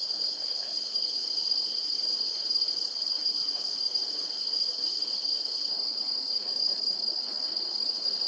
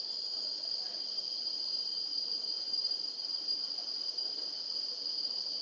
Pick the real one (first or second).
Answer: second